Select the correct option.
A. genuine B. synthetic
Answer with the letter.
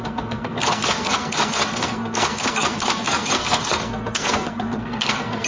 B